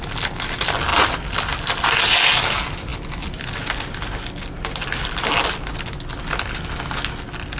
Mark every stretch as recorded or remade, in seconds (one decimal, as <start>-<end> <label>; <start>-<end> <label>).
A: 0.0-7.6 recorded